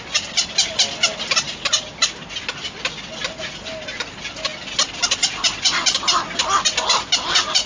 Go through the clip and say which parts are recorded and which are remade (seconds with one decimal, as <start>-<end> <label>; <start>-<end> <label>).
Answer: 0.0-7.7 recorded